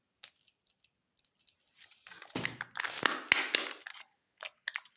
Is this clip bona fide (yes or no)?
yes